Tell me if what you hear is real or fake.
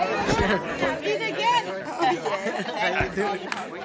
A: real